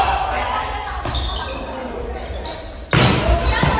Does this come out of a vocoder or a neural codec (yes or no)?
no